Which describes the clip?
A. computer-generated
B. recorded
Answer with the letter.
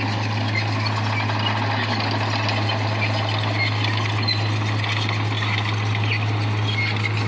B